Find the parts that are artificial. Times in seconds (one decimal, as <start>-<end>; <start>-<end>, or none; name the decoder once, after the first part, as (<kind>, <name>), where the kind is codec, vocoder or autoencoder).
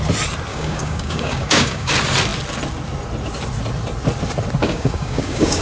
0.5-1.9 (codec, DAC); 4.6-5.6